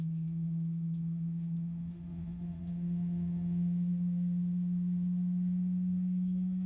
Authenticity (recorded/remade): remade